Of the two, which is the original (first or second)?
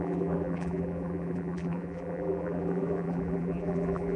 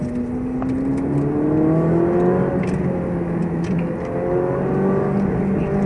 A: second